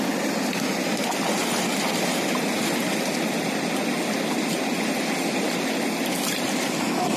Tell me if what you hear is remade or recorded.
recorded